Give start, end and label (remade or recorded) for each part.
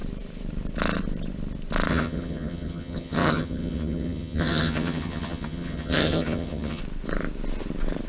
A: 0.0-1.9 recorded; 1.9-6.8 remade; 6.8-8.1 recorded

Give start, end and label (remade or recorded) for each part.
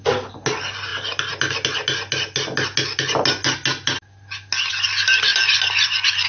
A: 0.0-6.3 recorded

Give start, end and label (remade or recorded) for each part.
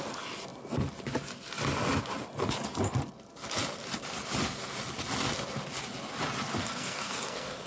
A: 0.0-6.6 recorded; 6.6-7.7 remade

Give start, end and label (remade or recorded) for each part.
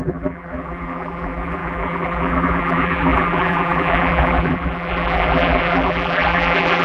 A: 0.0-6.8 remade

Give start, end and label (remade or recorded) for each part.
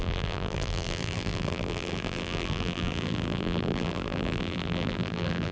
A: 0.0-5.5 remade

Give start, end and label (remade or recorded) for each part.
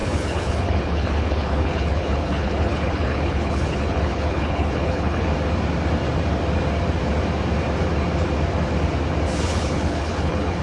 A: 0.0-5.3 remade; 5.3-9.4 recorded; 9.4-10.6 remade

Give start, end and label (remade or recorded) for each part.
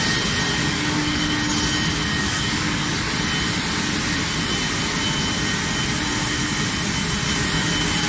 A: 0.0-0.6 recorded; 0.6-1.3 remade; 1.3-2.2 recorded; 2.2-3.1 remade; 3.1-8.1 recorded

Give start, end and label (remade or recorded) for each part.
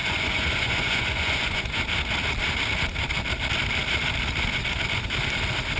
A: 0.0-1.8 remade; 1.8-5.8 recorded